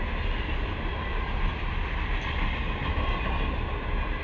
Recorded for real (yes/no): yes